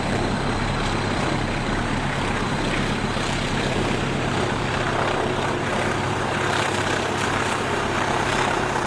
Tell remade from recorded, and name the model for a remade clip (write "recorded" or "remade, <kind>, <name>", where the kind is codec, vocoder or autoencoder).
remade, vocoder, BigVGAN v2